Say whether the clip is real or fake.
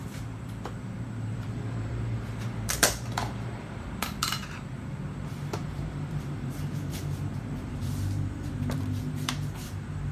fake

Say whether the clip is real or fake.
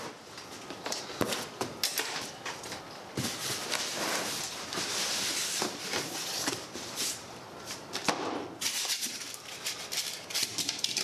fake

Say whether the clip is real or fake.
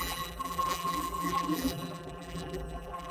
fake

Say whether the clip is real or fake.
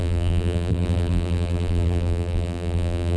fake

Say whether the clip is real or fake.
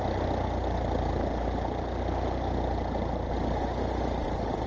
real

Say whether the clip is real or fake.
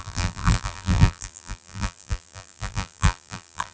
fake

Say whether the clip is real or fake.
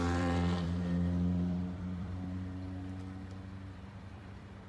fake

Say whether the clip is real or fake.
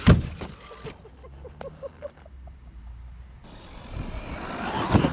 real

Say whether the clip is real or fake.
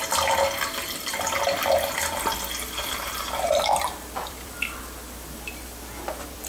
fake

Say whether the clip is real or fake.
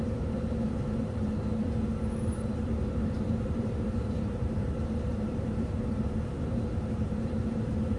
fake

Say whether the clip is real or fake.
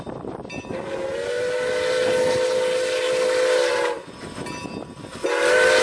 real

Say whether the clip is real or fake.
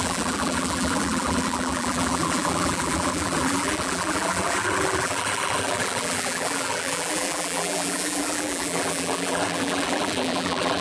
fake